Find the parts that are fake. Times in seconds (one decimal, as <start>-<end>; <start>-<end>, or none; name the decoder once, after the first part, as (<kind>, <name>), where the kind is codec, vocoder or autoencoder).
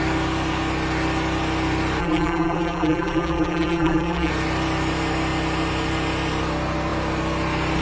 2.0-4.3 (vocoder, BigVGAN v2)